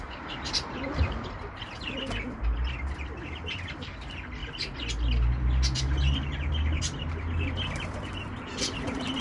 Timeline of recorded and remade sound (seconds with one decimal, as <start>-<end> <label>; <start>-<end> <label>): 0.0-4.4 remade; 4.4-6.8 recorded; 6.8-9.2 remade